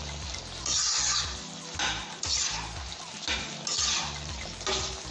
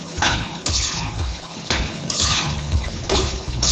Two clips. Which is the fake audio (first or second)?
second